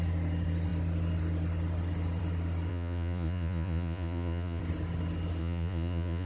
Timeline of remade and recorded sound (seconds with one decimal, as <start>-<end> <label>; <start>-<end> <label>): 0.0-2.7 recorded; 2.7-4.6 remade; 4.6-5.4 recorded; 5.4-6.3 remade